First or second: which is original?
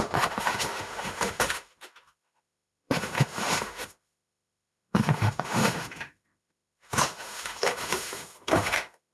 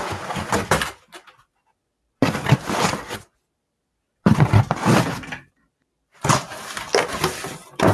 second